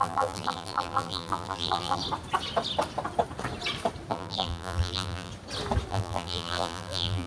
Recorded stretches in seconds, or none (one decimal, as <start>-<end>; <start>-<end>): 2.0-4.1; 5.3-5.9